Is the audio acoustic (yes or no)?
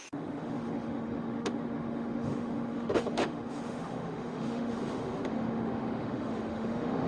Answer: no